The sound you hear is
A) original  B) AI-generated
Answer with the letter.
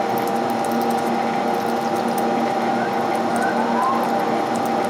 A